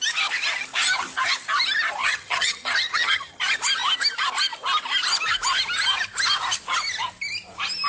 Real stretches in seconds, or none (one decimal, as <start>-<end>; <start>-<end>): 0.0-2.0; 3.4-7.9